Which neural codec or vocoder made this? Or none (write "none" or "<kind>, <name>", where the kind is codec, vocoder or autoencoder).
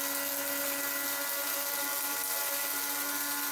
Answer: none